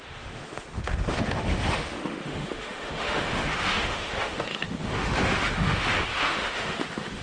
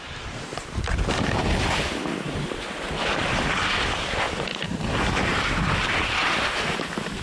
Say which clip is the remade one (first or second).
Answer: first